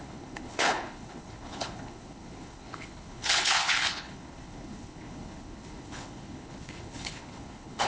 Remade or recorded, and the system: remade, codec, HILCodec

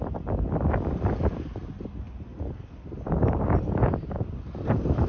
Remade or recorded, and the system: recorded